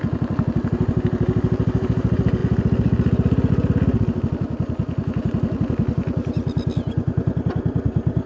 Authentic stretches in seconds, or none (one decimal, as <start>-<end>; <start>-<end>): 0.0-8.3